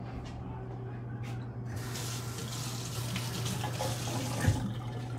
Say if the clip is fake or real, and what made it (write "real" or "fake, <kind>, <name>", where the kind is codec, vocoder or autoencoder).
real